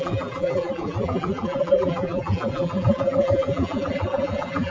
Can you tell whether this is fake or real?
fake